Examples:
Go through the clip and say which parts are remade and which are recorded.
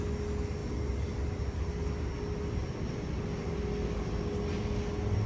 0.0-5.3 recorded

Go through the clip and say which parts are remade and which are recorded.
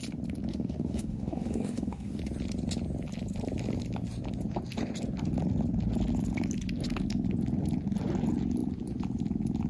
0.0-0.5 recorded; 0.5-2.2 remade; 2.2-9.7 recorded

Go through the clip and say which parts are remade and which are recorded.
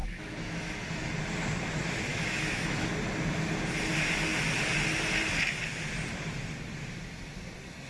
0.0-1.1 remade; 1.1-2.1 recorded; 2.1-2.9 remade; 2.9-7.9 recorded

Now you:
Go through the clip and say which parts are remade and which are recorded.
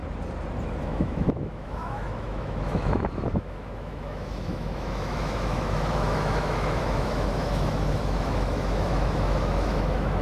0.0-0.8 recorded; 0.8-10.2 remade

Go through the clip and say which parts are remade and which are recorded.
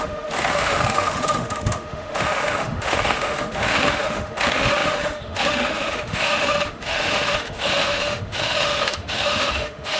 0.0-10.0 remade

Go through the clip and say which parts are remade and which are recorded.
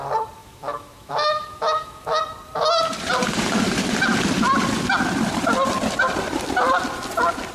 0.0-0.4 recorded; 0.4-2.2 remade; 2.2-7.5 recorded